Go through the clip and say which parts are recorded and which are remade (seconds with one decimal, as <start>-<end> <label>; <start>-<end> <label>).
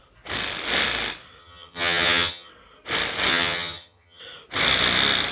0.0-1.4 recorded; 1.4-2.5 remade; 2.5-3.3 recorded; 3.3-4.2 remade; 4.2-5.3 recorded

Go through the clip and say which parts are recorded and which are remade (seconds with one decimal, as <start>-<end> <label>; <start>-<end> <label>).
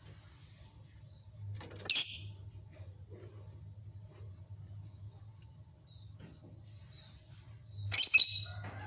0.0-8.9 recorded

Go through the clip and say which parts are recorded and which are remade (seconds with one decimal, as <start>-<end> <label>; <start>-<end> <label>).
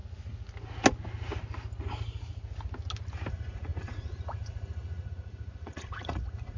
0.0-3.3 recorded; 3.3-6.6 remade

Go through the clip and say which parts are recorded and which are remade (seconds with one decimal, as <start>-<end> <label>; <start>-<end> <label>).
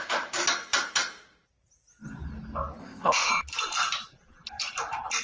0.0-2.8 recorded; 2.8-3.3 remade; 3.3-5.2 recorded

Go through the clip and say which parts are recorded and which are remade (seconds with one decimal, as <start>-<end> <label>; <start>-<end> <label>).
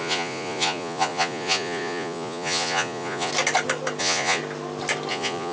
0.0-3.3 remade; 3.3-4.0 recorded; 4.0-4.4 remade; 4.4-5.1 recorded; 5.1-5.5 remade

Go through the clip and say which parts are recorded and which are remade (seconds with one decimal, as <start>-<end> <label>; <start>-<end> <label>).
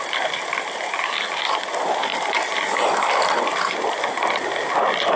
0.0-5.2 recorded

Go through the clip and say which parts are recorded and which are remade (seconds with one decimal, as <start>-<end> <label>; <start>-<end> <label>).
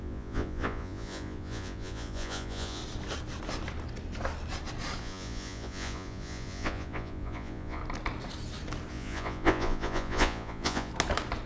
0.0-2.8 remade; 2.8-5.0 recorded; 5.0-7.8 remade; 7.8-8.9 recorded; 8.9-10.9 remade; 10.9-11.5 recorded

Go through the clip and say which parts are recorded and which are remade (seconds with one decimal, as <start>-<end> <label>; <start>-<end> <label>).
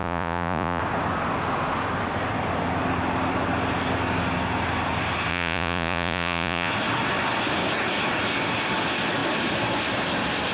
0.0-0.8 remade; 0.8-5.3 recorded; 5.3-6.7 remade; 6.7-10.5 recorded